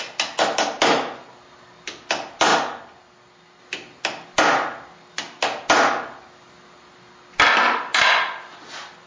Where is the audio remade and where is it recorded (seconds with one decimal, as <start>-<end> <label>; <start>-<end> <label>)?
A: 0.0-9.1 recorded